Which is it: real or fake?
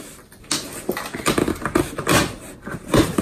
real